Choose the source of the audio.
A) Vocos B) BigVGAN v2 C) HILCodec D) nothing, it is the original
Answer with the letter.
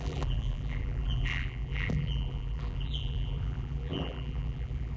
B